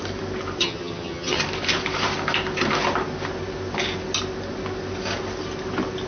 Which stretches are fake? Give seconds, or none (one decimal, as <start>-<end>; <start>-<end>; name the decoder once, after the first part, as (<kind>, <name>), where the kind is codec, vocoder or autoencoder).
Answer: 0.6-1.4 (vocoder, HiFi-GAN)